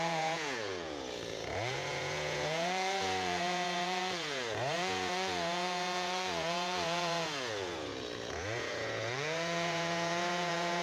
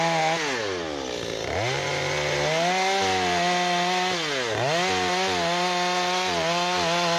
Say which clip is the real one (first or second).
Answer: second